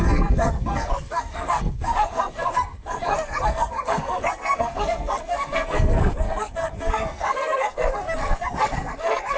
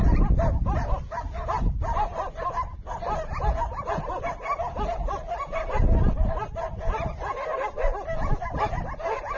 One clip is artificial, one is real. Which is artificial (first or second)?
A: first